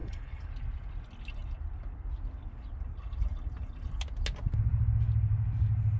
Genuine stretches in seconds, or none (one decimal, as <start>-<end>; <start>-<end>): 0.5-6.0